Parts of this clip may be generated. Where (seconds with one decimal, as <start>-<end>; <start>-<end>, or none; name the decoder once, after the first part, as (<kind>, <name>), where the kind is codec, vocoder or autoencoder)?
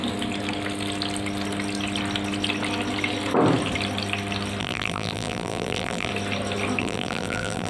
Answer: 4.6-6.1 (vocoder, BigVGAN v2); 6.8-7.7